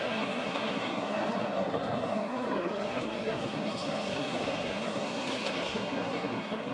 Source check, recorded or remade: remade